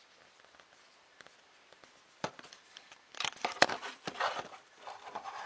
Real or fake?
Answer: fake